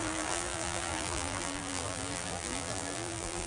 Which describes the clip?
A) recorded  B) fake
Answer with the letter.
B